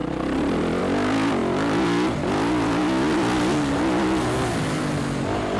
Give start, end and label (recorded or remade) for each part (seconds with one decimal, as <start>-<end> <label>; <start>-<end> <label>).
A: 0.0-5.6 recorded